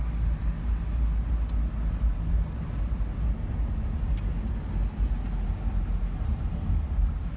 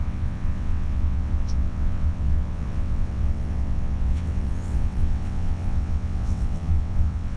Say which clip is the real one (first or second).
first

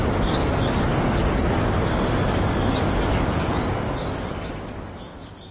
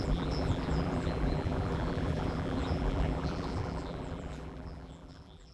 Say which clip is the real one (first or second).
first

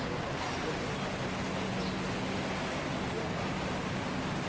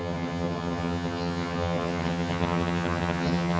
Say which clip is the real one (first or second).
first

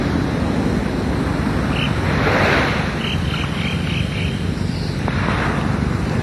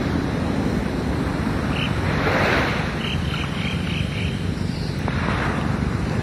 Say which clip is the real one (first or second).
first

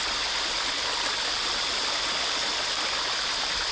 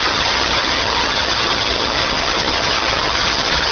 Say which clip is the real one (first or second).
first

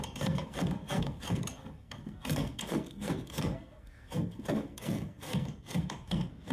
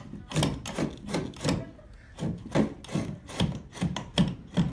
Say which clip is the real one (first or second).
second